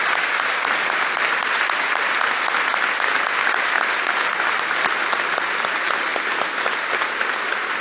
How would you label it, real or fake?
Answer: real